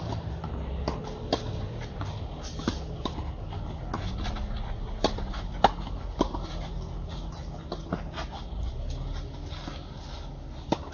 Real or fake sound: real